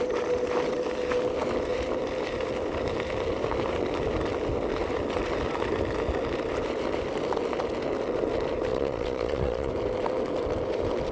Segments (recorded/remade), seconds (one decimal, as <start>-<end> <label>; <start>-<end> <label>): 0.0-8.7 recorded; 8.7-9.7 remade; 9.7-11.1 recorded